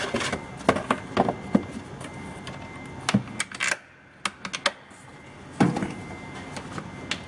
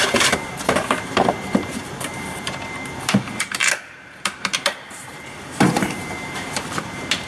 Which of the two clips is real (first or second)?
first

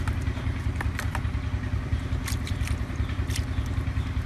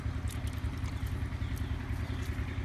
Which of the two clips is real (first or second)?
second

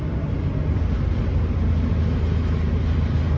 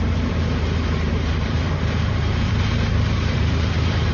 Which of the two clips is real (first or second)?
first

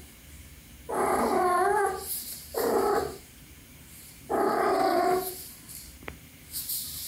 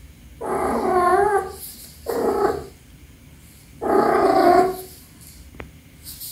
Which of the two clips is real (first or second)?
second